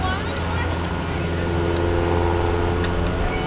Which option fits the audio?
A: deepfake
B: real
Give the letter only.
B